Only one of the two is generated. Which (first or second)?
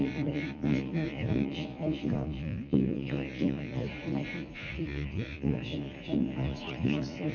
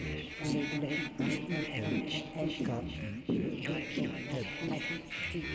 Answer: first